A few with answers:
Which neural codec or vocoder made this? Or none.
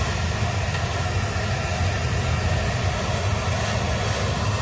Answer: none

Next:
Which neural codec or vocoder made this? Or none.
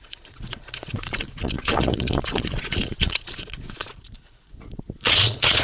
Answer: vocoder, Vocos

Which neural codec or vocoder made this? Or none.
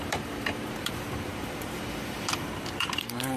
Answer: vocoder, BigVGAN v2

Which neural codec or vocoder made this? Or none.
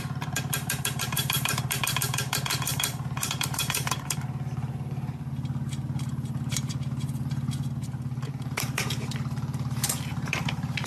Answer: vocoder, BigVGAN v2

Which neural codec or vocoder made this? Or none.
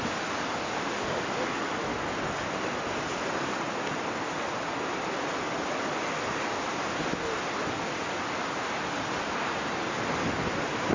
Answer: none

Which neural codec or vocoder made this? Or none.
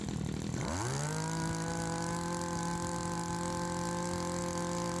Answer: none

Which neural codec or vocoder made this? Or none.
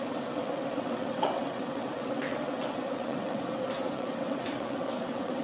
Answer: vocoder, WaveNeXt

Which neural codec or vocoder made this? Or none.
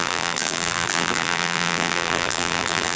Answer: vocoder, BigVGAN v2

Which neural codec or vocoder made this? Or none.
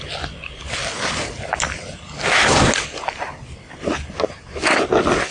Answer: none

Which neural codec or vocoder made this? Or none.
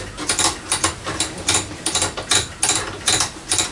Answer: none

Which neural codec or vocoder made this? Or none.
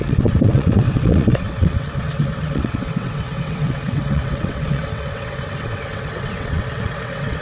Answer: vocoder, WaveNeXt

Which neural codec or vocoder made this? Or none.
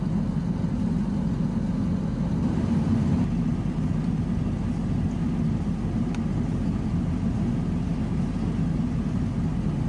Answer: none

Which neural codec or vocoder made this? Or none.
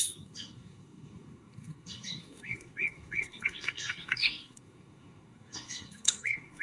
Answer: codec, SNAC